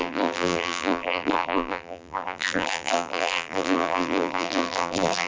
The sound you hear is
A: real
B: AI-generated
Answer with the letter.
B